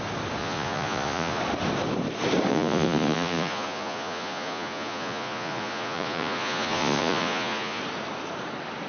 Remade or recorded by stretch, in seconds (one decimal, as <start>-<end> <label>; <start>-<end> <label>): 0.0-0.4 recorded; 0.4-1.4 remade; 1.4-2.5 recorded; 2.5-7.8 remade; 7.8-8.9 recorded